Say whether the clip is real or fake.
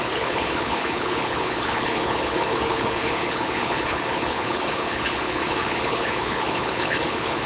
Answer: fake